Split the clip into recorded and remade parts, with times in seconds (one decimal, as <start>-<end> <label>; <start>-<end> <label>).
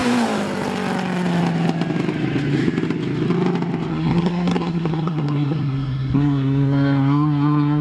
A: 0.0-3.9 recorded; 3.9-7.8 remade